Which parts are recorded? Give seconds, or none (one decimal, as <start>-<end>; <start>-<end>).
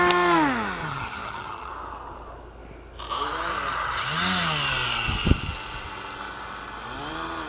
0.0-0.8; 1.7-7.5